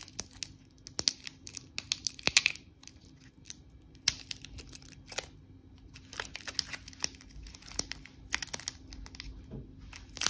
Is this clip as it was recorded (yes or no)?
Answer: yes